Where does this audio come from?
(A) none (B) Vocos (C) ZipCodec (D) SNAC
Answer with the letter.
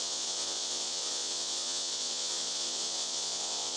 B